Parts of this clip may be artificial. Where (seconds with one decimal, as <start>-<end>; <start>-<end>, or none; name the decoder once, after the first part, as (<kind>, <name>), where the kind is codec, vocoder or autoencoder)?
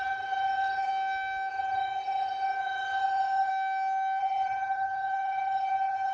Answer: 0.0-0.9 (vocoder, HiFi-GAN); 1.5-3.5; 4.2-6.1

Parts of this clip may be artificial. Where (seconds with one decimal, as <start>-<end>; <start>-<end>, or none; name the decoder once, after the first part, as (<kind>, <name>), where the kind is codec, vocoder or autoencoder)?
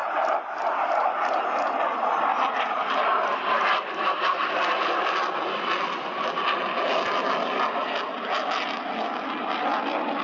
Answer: none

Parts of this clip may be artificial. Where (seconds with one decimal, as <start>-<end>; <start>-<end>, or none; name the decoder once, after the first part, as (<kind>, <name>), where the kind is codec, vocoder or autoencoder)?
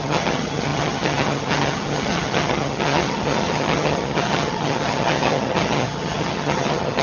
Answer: 0.0-7.0 (vocoder, HiFi-GAN)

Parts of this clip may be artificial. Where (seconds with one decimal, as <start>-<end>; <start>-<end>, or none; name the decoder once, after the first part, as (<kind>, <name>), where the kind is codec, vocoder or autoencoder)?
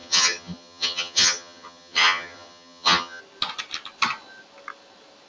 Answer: 0.0-3.2 (vocoder, HiFi-GAN)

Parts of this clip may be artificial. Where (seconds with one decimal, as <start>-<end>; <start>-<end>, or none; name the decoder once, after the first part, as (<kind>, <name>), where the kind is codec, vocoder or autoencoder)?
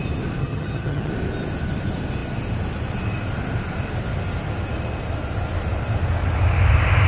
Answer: 0.4-1.1 (vocoder, HiFi-GAN)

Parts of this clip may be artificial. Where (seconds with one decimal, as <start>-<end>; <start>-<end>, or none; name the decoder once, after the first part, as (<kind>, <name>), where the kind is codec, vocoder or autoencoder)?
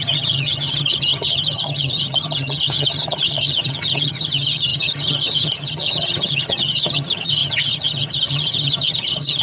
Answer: 0.0-9.4 (vocoder, HiFi-GAN)